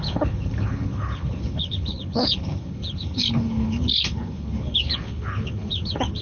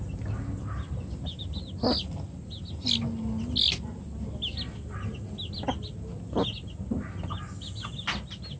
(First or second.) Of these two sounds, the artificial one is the first